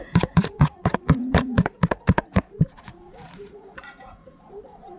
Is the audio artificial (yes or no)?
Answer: yes